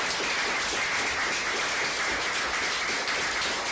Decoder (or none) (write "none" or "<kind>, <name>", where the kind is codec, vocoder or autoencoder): none